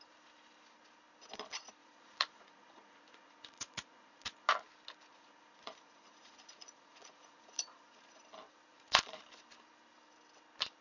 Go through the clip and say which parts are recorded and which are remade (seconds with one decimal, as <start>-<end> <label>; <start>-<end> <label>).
0.0-1.8 recorded; 1.8-4.5 remade; 4.5-5.1 recorded; 5.1-8.2 remade; 8.2-8.7 recorded; 8.7-9.2 remade; 9.2-10.8 recorded